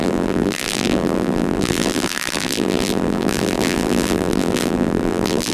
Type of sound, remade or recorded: remade